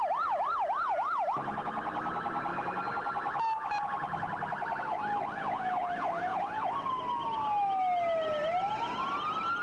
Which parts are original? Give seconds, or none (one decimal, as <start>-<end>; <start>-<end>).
0.0-9.6